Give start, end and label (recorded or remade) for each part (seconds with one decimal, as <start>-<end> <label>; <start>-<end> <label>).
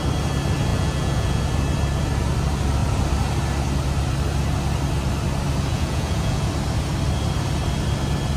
0.0-0.7 recorded; 0.7-1.4 remade; 1.4-5.7 recorded; 5.7-6.5 remade; 6.5-8.4 recorded